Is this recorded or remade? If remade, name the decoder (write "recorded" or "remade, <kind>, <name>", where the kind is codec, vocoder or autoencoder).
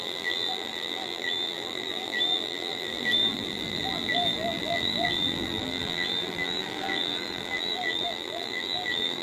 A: remade, vocoder, BigVGAN v2